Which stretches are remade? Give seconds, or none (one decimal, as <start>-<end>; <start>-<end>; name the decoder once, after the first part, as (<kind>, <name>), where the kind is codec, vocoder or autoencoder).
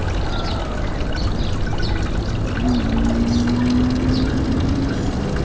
none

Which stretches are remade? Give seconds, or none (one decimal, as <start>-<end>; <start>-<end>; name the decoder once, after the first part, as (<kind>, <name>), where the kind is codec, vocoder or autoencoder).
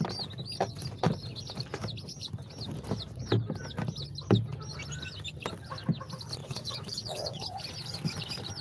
6.4-7.4 (vocoder, WaveNeXt)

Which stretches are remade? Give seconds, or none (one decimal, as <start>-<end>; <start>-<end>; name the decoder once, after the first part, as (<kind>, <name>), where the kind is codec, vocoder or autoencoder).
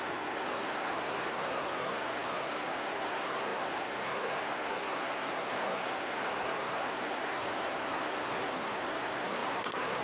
0.0-10.0 (codec, SNAC)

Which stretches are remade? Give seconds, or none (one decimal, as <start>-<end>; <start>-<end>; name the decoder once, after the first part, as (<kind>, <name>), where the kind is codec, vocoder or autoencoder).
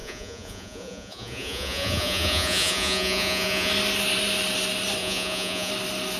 0.0-3.7 (vocoder, Vocos); 5.0-5.7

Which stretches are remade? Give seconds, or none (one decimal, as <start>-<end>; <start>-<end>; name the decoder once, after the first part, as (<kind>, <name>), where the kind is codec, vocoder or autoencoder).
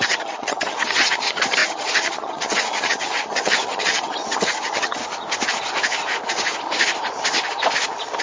0.0-5.0 (vocoder, HiFi-GAN)